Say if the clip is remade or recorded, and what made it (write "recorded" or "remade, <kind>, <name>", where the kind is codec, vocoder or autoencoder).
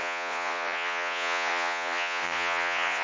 remade, vocoder, Vocos